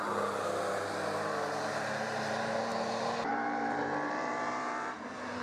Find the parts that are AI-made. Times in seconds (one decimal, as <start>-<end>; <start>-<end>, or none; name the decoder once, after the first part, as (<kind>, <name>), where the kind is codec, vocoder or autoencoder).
0.0-5.4 (vocoder, BigVGAN v2)